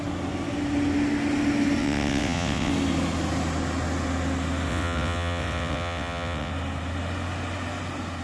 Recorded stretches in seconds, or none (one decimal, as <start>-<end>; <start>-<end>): 0.0-1.8; 2.7-4.7; 6.5-8.2